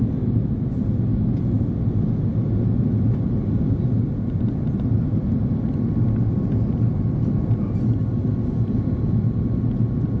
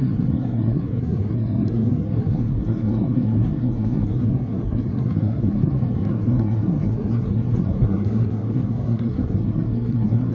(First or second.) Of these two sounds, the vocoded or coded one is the second